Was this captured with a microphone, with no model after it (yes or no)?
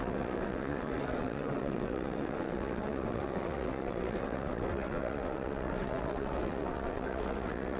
no